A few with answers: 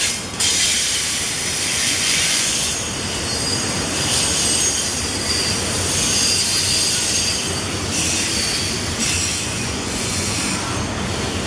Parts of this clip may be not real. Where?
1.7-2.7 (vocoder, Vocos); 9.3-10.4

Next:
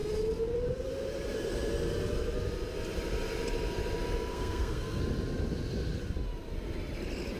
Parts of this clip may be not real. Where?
4.3-5.0 (codec, SNAC)

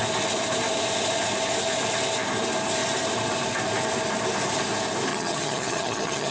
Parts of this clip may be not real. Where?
5.1-6.3 (vocoder, HiFi-GAN)

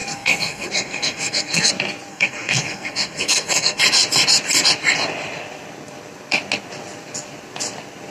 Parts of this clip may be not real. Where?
0.0-1.7 (codec, SNAC); 2.1-3.8

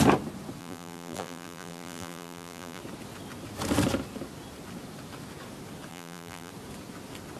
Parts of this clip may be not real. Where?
0.6-2.8 (vocoder, BigVGAN v2); 5.9-6.5